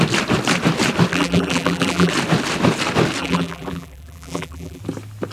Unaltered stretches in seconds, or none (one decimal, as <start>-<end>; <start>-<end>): 0.0-1.1; 2.1-3.2; 4.8-5.3